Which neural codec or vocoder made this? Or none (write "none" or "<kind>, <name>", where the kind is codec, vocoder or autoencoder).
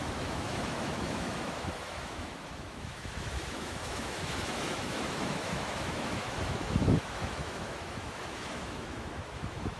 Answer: autoencoder, DAC-VAE